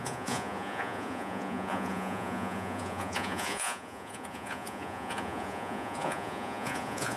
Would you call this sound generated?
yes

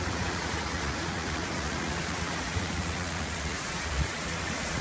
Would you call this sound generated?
yes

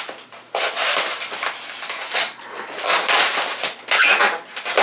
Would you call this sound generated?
no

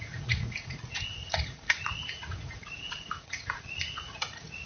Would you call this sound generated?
yes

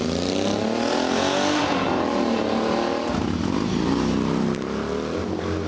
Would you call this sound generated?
no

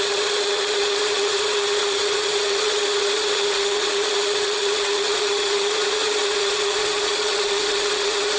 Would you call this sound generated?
yes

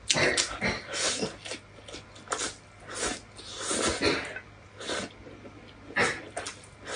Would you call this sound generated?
no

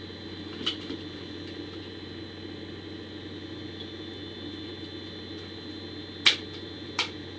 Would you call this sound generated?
no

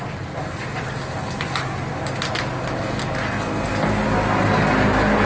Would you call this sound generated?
no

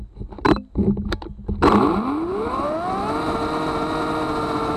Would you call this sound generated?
no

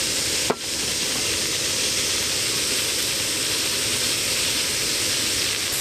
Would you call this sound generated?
no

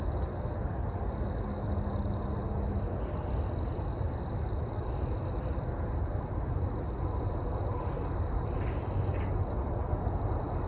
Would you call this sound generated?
no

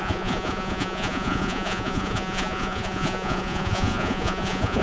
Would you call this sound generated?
yes